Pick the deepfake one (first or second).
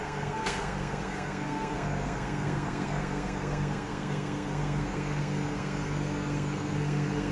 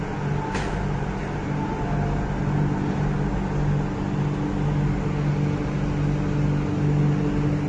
first